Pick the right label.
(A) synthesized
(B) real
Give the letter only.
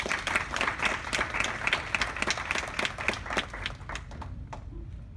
B